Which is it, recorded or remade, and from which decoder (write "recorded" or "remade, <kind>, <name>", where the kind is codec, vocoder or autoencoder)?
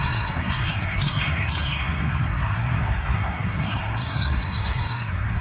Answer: remade, codec, SNAC